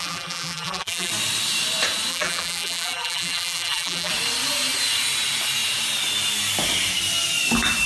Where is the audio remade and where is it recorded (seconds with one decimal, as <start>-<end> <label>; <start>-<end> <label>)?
0.0-1.1 remade; 1.1-2.1 recorded; 2.1-4.1 remade; 4.1-7.9 recorded